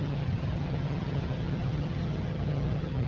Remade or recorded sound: remade